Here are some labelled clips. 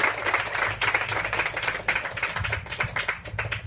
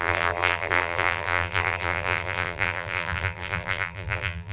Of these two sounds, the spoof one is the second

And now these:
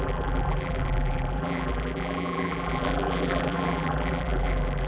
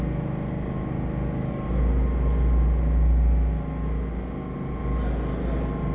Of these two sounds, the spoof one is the first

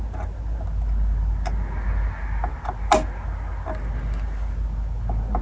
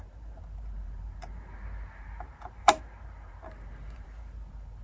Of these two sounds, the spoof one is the second